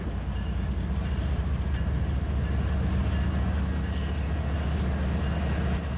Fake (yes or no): no